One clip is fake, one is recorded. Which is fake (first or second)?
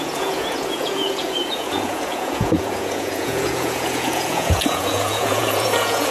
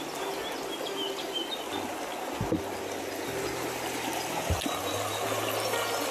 first